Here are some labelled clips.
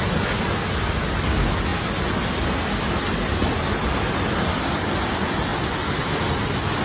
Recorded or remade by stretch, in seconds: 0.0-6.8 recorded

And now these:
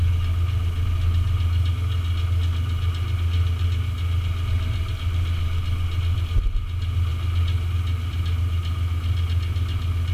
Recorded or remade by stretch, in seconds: 0.0-10.1 recorded

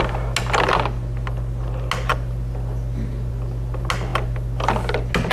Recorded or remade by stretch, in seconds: 0.0-5.3 recorded

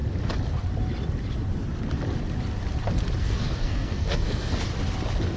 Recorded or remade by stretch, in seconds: 0.0-3.2 recorded; 3.2-4.7 remade; 4.7-5.4 recorded

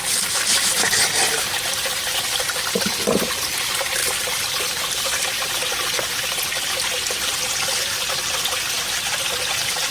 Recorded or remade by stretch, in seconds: 0.0-9.9 recorded

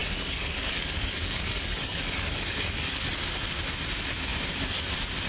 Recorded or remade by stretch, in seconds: 0.0-3.2 remade; 3.2-5.3 recorded

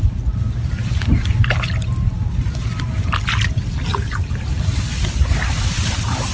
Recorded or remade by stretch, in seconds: 0.0-6.3 recorded

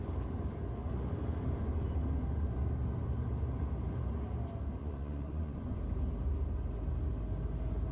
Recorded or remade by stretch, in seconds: 0.0-4.8 recorded; 4.8-5.8 remade; 5.8-7.9 recorded